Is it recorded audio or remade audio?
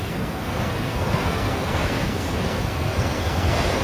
remade